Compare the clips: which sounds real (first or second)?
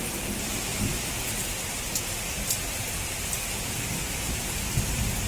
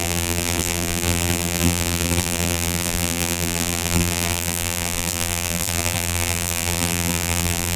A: first